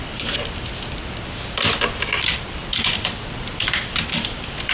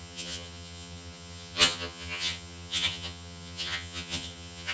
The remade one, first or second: second